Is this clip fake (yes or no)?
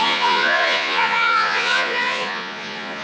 yes